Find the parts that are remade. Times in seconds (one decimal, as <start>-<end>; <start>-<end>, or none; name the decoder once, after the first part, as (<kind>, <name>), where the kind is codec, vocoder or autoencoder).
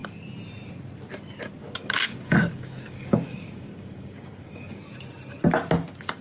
1.8-4.8 (codec, DAC)